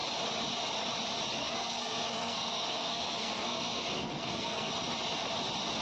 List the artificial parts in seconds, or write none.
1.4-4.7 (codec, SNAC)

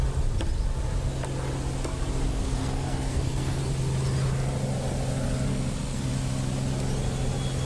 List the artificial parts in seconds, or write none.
2.3-3.6 (codec, SNAC); 5.5-6.1

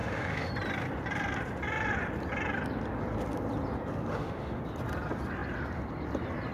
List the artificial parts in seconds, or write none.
0.0-0.5 (autoencoder, DAC-VAE); 4.1-4.6

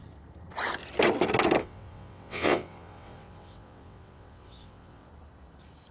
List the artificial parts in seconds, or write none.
1.6-5.1 (vocoder, WaveNeXt)